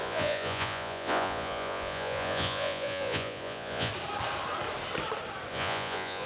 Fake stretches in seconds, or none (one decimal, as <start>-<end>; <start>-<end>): 0.0-3.9; 5.5-6.3